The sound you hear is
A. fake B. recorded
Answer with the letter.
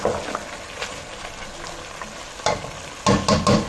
B